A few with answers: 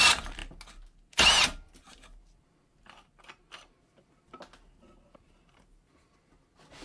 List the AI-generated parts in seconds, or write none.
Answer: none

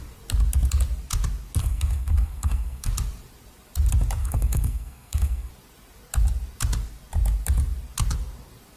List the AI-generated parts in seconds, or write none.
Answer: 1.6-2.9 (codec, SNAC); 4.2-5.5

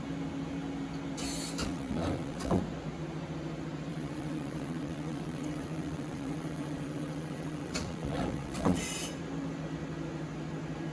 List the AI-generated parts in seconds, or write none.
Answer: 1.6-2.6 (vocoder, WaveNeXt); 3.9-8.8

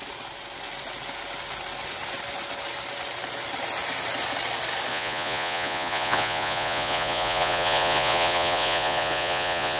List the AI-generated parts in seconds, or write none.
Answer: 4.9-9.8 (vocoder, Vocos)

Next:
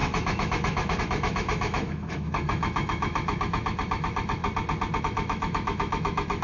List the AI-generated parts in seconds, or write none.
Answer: 0.0-4.4 (autoencoder, DAC-VAE); 5.0-6.4

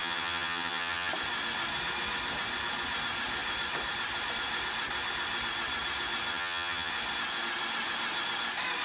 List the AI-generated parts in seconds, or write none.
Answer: 0.0-1.1 (vocoder, HiFi-GAN); 6.3-6.9

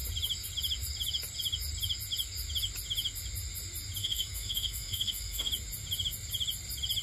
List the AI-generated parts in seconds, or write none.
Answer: 4.0-5.5 (autoencoder, DAC-VAE)

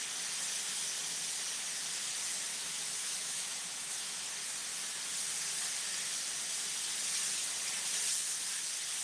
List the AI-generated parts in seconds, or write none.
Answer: 2.5-4.2 (autoencoder, DAC-VAE)